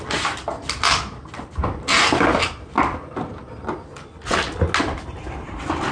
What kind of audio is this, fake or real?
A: real